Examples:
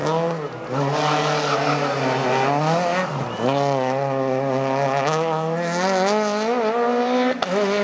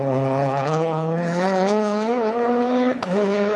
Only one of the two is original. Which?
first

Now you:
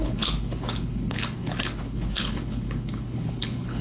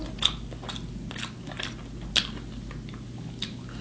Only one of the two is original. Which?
second